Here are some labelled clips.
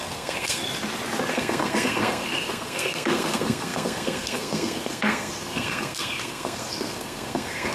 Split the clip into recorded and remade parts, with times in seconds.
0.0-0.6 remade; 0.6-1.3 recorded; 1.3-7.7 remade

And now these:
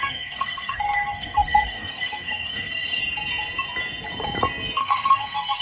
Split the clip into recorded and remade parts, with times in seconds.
0.0-3.0 remade; 3.0-4.8 recorded; 4.8-5.6 remade

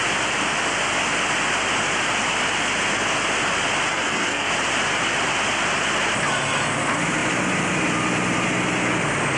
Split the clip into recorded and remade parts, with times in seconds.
0.0-3.9 recorded; 3.9-4.5 remade; 4.5-9.4 recorded